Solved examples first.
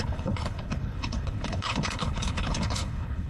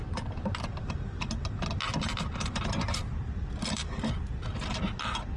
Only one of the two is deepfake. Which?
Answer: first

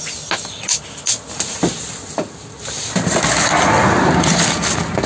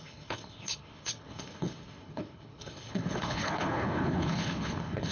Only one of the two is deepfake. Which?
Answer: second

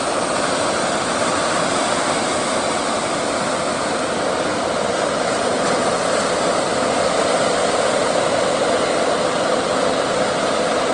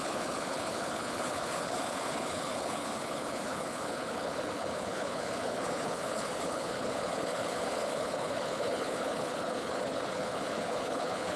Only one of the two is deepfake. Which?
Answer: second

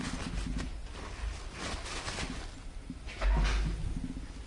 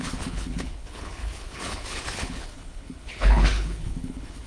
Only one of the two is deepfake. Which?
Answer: second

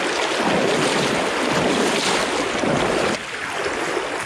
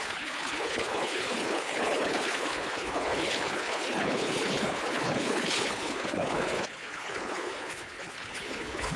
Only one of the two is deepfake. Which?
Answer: second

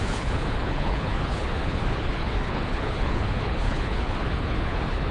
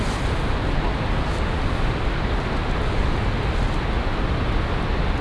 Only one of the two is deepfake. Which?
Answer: first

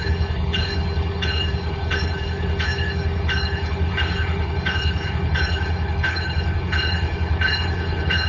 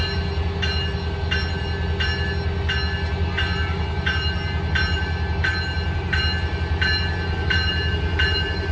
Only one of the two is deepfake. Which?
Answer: first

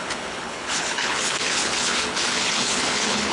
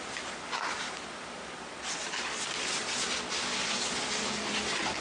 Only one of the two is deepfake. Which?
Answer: first